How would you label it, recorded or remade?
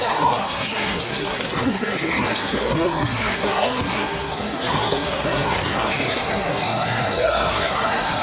remade